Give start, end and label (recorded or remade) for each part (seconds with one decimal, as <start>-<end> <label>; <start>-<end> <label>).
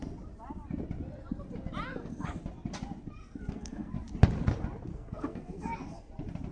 0.0-1.9 recorded; 1.9-2.4 remade; 2.4-3.2 recorded; 3.2-3.9 remade; 3.9-4.9 recorded; 4.9-6.1 remade; 6.1-6.5 recorded